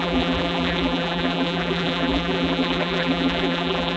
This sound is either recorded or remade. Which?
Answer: remade